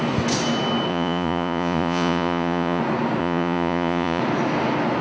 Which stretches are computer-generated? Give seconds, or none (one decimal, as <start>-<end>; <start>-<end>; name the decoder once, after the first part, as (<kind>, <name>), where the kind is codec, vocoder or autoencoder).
0.9-2.8 (vocoder, Vocos); 3.2-4.2